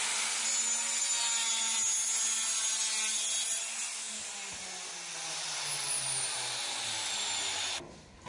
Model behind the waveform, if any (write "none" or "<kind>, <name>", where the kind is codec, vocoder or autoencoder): none